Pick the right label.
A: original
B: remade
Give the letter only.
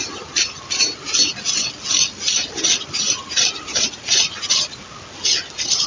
A